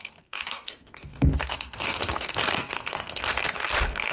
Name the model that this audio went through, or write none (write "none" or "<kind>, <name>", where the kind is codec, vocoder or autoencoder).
codec, SNAC